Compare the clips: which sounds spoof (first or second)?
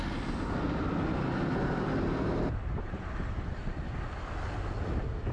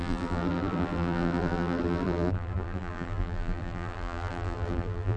second